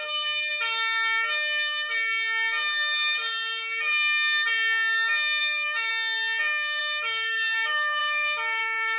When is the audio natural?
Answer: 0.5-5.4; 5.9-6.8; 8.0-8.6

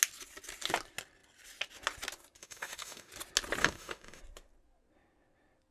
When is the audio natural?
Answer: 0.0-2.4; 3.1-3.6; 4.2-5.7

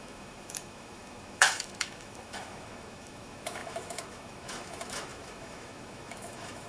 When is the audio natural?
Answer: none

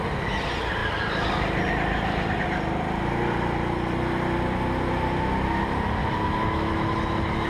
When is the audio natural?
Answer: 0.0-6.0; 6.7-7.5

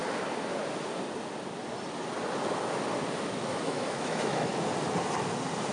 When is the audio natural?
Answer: 0.0-3.2; 4.5-5.7

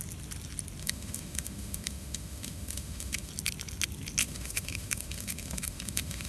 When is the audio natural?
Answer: 0.0-0.8; 3.3-4.2